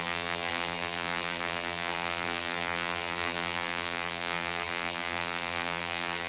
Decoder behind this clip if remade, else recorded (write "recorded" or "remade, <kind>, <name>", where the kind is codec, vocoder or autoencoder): remade, vocoder, BigVGAN v2